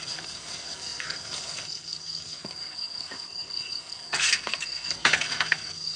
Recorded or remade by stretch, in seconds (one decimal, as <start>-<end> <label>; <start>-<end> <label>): 0.0-6.0 remade

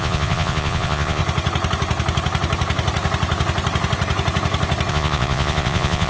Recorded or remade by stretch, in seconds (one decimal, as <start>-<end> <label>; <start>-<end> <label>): 0.0-1.2 remade; 1.2-4.9 recorded; 4.9-6.1 remade

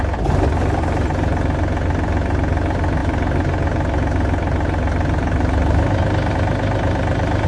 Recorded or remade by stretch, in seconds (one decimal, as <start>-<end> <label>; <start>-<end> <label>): 0.0-7.5 recorded

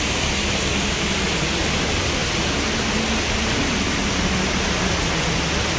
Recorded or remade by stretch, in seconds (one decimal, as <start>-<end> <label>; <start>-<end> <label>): 0.0-5.8 recorded

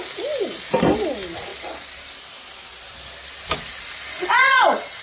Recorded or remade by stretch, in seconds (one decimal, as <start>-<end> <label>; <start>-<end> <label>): 0.0-4.1 recorded; 4.1-5.0 remade

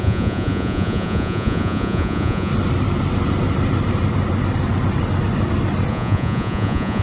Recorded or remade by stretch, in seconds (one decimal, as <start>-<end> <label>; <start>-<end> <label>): 0.0-2.5 remade; 2.5-5.9 recorded; 5.9-7.0 remade